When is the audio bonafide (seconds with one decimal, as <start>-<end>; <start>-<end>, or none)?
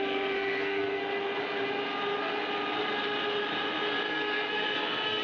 1.0-4.1